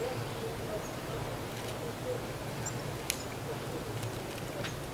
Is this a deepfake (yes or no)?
no